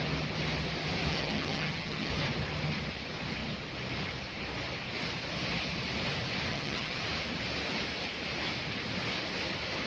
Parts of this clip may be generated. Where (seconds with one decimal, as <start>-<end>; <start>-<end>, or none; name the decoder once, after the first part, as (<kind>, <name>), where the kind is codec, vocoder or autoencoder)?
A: 1.1-2.1 (vocoder, HiFi-GAN); 6.5-7.0